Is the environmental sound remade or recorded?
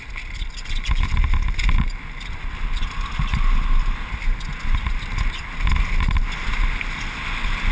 recorded